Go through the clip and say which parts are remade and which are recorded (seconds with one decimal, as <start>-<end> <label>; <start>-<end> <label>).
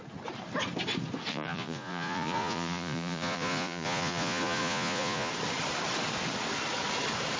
0.0-1.3 recorded; 1.3-5.3 remade; 5.3-7.4 recorded